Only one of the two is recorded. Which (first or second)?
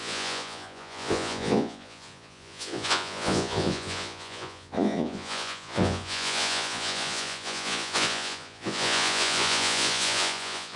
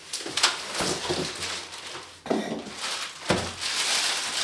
second